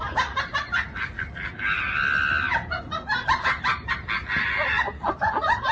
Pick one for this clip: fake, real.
real